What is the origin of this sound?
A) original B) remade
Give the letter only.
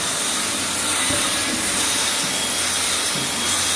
A